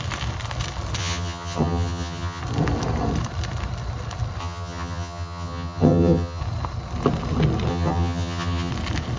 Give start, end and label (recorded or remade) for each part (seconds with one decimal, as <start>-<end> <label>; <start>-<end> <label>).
0.0-1.0 recorded; 1.0-2.4 remade; 2.4-4.4 recorded; 4.4-6.4 remade; 6.4-7.7 recorded; 7.7-8.7 remade; 8.7-9.2 recorded